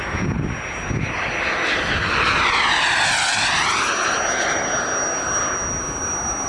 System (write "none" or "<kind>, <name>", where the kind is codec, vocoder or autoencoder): none